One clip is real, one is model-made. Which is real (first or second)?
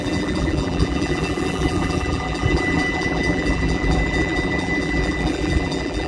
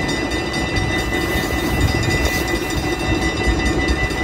second